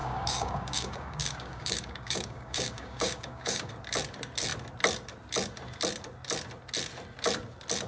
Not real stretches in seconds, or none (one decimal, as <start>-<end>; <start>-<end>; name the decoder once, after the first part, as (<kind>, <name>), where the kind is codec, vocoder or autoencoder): 0.0-3.7 (codec, DAC)

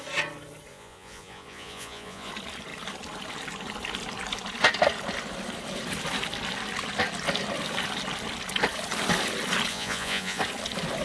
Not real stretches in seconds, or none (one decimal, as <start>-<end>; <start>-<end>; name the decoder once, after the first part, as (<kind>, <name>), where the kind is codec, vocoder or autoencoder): 0.7-2.3 (vocoder, Vocos); 9.7-10.4

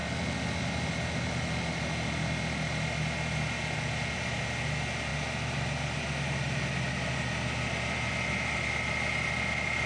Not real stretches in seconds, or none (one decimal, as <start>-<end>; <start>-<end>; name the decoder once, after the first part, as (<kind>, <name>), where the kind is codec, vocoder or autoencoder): none

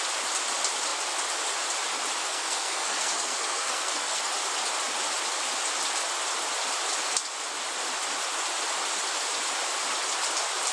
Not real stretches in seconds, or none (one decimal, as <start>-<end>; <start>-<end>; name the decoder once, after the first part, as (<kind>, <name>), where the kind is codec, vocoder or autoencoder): 2.2-4.3 (codec, SNAC)